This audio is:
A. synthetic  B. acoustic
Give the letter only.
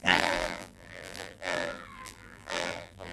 A